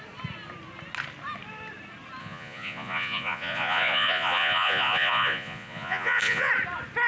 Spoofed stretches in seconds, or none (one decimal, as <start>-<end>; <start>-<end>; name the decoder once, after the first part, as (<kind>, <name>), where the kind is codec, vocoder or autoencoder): 2.2-6.5 (vocoder, Vocos)